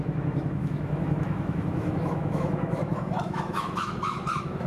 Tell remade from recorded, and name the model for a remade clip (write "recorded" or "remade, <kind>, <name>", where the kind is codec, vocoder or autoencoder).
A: remade, autoencoder, DAC-VAE